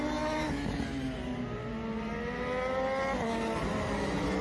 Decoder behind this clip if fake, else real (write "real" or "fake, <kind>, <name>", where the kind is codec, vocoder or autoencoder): real